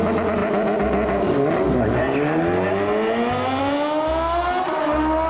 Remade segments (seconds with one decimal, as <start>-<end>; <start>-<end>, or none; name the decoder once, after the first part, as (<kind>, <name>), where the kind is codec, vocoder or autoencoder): none